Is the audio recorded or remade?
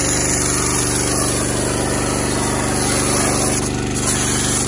recorded